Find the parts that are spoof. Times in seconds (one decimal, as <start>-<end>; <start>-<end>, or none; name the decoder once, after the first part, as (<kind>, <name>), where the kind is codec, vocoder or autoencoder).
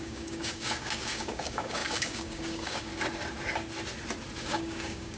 0.0-2.9 (codec, DAC); 4.4-5.2